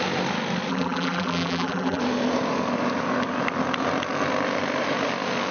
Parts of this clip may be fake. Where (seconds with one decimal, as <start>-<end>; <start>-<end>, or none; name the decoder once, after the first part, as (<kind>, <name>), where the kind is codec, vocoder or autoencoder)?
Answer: 0.7-2.0 (vocoder, BigVGAN v2)